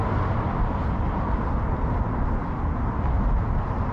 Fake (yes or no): no